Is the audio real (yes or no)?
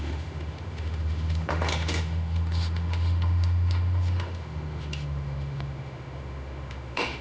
no